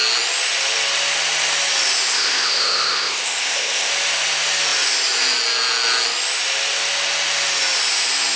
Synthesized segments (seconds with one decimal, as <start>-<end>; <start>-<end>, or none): 2.1-3.9